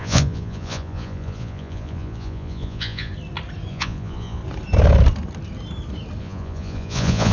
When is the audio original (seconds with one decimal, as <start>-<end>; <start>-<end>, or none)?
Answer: 3.1-3.7; 4.4-6.2